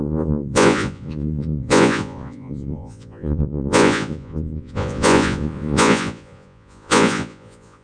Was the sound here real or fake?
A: fake